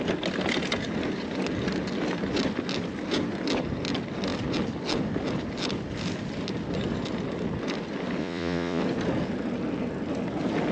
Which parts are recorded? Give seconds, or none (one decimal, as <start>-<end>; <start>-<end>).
0.0-8.2; 8.8-10.7